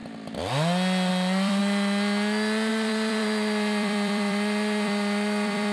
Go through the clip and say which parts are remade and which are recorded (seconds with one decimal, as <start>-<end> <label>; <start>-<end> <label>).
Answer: 0.0-1.1 recorded; 1.1-1.6 remade; 1.6-2.7 recorded; 2.7-5.7 remade

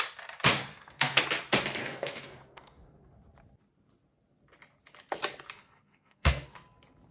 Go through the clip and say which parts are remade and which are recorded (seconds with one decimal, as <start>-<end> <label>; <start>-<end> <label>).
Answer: 0.0-0.6 recorded; 0.6-1.2 remade; 1.2-1.8 recorded; 1.8-3.1 remade; 3.1-5.6 recorded; 5.6-6.6 remade; 6.6-7.1 recorded

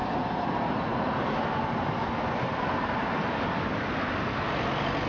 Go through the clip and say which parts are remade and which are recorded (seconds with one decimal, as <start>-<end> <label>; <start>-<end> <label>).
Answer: 0.0-5.1 recorded

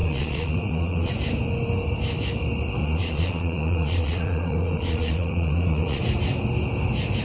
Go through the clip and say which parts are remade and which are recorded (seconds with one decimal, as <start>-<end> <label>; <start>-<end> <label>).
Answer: 0.0-1.1 remade; 1.1-2.8 recorded; 2.8-6.0 remade; 6.0-7.2 recorded

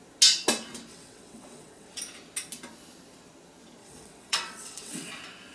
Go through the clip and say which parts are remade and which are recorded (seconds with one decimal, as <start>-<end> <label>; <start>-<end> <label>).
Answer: 0.0-0.9 recorded; 0.9-2.0 remade; 2.0-3.8 recorded; 3.8-5.1 remade; 5.1-5.5 recorded